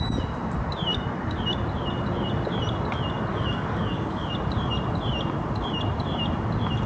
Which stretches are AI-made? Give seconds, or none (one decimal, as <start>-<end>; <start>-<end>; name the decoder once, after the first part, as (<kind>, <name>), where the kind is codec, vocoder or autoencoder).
3.3-4.3 (codec, DAC)